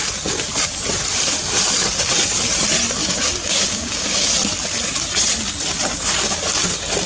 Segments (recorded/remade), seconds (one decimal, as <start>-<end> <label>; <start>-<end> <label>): 0.0-3.0 recorded; 3.0-4.3 remade; 4.3-7.1 recorded